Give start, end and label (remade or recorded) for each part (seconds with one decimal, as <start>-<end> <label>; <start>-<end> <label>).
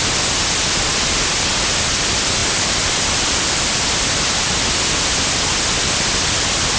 0.0-2.4 recorded; 2.4-4.0 remade; 4.0-6.8 recorded